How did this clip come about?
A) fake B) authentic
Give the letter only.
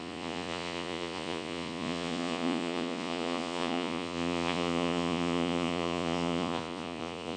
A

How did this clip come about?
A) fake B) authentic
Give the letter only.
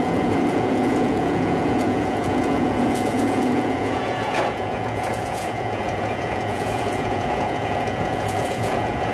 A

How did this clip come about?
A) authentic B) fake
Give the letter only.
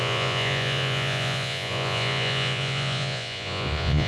B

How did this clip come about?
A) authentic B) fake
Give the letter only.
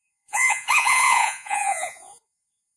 B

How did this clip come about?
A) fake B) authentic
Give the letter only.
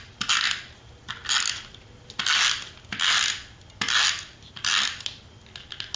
B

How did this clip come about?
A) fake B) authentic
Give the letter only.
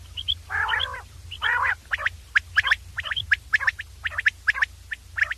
B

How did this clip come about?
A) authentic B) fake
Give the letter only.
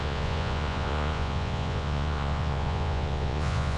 B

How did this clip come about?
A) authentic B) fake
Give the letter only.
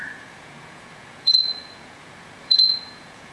B